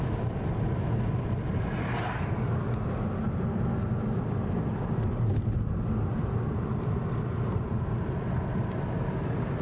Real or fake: real